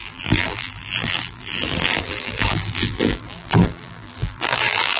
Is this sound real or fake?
fake